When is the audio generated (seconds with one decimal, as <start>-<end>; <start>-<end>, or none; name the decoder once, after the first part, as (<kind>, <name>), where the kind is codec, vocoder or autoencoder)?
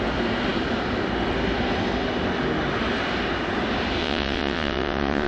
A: 4.0-5.3 (vocoder, WaveNeXt)